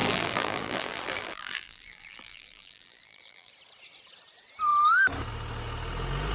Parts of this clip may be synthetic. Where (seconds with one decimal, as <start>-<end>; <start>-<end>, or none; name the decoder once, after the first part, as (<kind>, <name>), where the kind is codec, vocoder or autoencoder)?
0.0-3.5 (vocoder, BigVGAN v2)

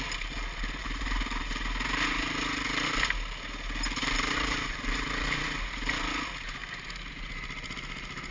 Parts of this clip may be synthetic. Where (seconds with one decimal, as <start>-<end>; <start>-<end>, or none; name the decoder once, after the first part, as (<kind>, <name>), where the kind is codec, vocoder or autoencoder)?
0.8-1.5 (vocoder, BigVGAN v2); 4.0-5.9; 6.6-7.1